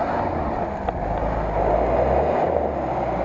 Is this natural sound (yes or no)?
yes